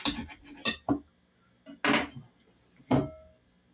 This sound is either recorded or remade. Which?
recorded